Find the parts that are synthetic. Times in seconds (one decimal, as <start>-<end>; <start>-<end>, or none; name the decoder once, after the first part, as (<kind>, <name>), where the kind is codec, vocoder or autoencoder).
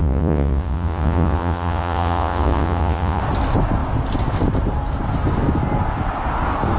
0.0-3.2 (vocoder, Vocos)